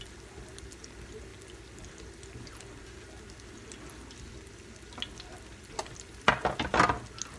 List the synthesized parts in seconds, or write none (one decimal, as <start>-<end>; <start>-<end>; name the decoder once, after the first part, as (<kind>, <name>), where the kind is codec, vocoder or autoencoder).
none